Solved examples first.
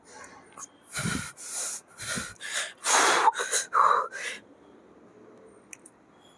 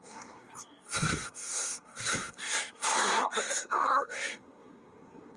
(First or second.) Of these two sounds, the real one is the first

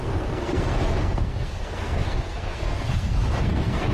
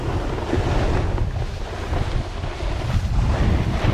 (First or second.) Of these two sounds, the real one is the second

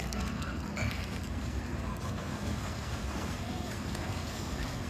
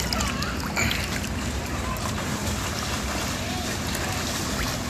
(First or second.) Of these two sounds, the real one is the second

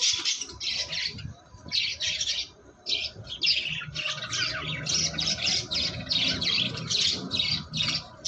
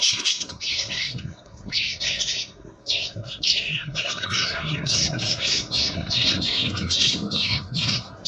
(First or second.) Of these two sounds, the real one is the first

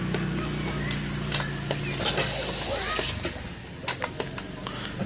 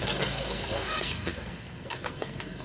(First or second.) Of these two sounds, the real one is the first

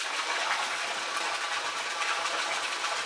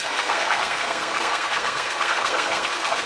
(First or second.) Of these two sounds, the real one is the first